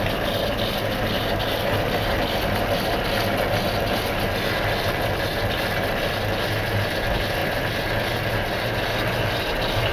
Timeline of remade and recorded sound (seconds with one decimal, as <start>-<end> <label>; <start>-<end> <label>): 0.0-9.9 recorded